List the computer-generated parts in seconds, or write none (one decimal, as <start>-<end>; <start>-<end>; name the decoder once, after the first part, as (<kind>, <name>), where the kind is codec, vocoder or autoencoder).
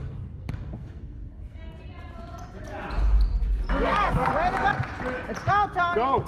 0.0-1.8 (codec, SNAC); 3.8-4.3